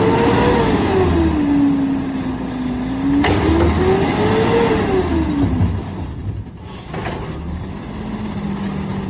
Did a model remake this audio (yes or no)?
no